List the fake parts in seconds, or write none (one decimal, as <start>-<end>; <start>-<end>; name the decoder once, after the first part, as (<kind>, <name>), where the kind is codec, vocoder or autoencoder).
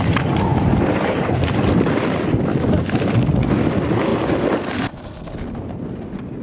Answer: none